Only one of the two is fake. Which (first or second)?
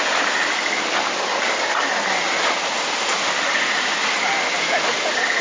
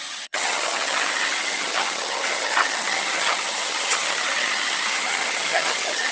second